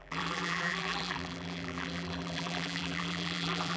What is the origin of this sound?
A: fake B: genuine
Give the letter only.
A